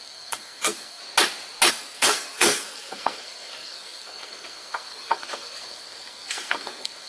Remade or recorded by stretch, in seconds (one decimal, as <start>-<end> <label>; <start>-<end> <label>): 0.0-1.0 remade; 1.0-1.7 recorded; 1.7-7.1 remade